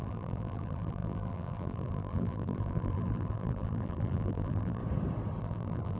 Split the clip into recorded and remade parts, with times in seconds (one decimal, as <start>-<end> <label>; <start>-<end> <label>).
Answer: 0.0-4.8 remade; 4.8-5.4 recorded; 5.4-6.0 remade